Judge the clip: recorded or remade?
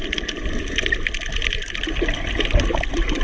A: recorded